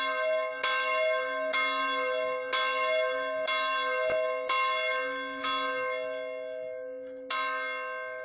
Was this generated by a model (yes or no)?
no